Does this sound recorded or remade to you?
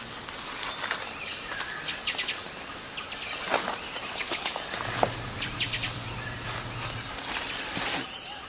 recorded